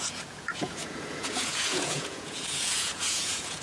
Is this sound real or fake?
fake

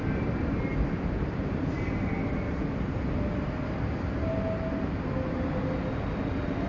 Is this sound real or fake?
real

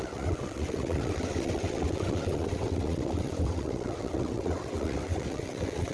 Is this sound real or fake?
fake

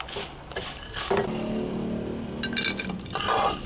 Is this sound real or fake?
real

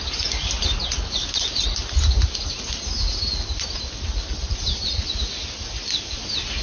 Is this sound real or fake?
real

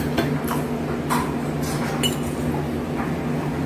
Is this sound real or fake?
real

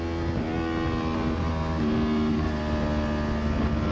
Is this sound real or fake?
real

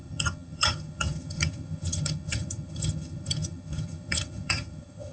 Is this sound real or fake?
fake